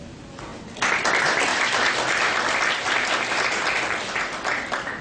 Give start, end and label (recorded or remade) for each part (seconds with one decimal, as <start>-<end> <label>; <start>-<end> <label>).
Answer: 0.0-5.0 recorded